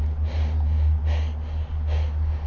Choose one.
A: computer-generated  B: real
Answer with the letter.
B